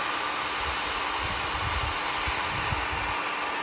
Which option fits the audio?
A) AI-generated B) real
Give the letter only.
B